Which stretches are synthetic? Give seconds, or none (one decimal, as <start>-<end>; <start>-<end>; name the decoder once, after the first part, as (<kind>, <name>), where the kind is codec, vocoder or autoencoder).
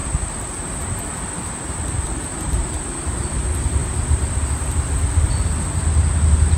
0.6-3.8 (vocoder, BigVGAN v2)